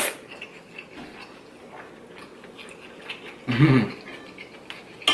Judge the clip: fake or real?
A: real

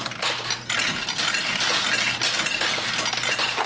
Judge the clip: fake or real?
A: real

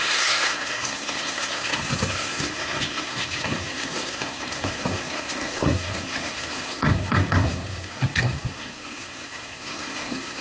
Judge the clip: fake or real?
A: fake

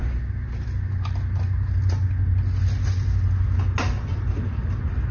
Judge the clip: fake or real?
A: real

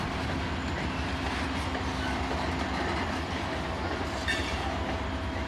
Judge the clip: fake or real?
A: real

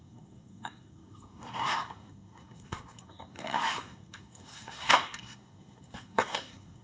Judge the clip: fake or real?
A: fake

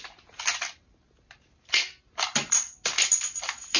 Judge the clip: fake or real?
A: real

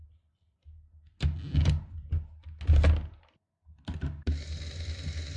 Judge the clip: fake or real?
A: real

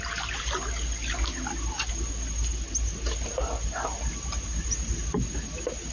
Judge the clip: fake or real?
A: real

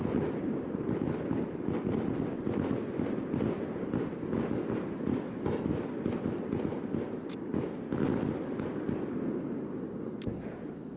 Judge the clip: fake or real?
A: real